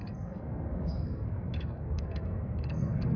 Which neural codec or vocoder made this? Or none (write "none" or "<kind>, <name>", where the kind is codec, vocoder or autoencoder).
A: codec, SNAC